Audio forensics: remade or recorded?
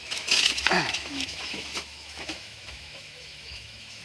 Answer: remade